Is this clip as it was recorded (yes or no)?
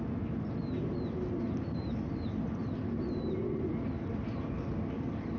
yes